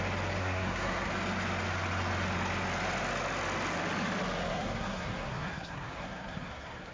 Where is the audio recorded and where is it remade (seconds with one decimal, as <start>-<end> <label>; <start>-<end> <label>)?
0.0-0.4 recorded; 0.4-1.1 remade; 1.1-4.5 recorded; 4.5-6.9 remade